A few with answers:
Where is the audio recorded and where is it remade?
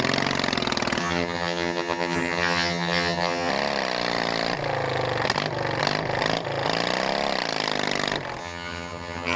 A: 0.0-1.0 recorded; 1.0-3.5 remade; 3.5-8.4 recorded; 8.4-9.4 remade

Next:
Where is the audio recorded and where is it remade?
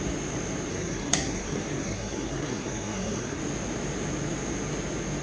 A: 0.0-0.7 recorded; 0.7-3.4 remade; 3.4-5.2 recorded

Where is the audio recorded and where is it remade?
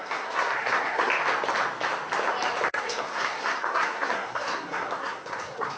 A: 0.0-1.1 remade; 1.1-2.7 recorded; 2.7-5.8 remade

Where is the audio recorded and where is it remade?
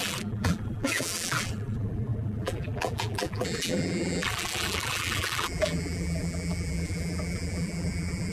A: 0.0-8.3 remade